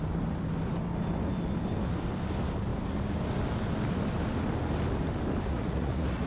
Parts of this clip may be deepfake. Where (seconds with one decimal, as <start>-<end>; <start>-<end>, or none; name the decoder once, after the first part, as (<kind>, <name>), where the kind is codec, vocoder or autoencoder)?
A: 5.5-6.3 (vocoder, Vocos)